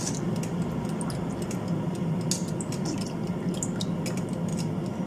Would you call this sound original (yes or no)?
yes